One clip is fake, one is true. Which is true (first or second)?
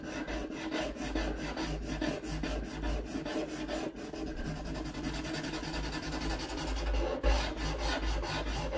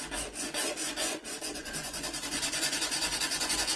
first